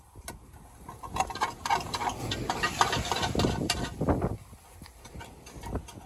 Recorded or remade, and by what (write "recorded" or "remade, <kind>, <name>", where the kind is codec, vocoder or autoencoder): recorded